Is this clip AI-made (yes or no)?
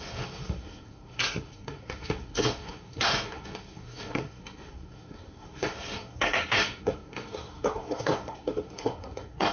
yes